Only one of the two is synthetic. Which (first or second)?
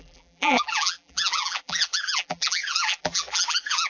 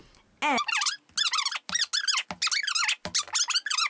first